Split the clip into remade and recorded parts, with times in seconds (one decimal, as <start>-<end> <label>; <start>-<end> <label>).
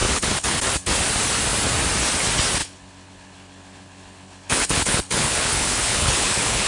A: 0.0-0.6 remade; 0.6-2.6 recorded; 2.6-6.7 remade